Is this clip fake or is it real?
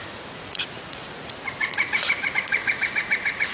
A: fake